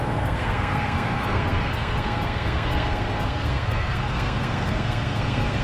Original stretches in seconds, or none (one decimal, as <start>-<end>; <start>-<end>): none